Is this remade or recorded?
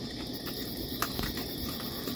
remade